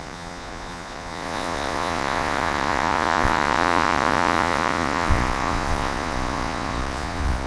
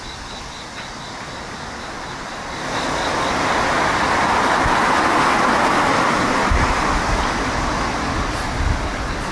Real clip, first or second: second